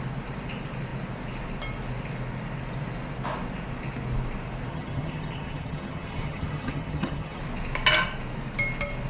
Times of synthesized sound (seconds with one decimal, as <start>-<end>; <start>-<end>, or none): 4.7-7.4